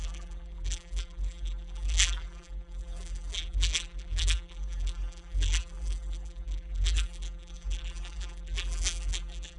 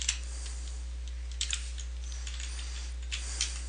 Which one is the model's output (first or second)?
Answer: first